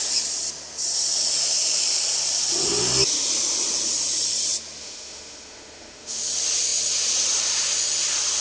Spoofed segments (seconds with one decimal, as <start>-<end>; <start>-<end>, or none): 4.8-6.2